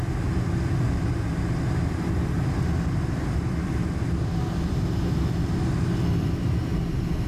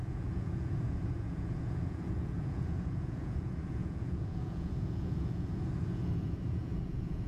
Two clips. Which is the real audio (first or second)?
first